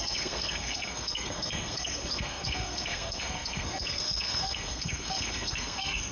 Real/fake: fake